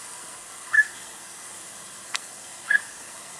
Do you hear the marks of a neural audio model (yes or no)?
yes